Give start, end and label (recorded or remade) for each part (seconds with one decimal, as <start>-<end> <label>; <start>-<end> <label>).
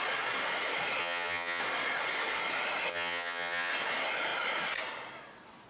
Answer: 0.0-1.0 recorded; 1.0-1.6 remade; 1.6-2.9 recorded; 2.9-3.7 remade; 3.7-5.7 recorded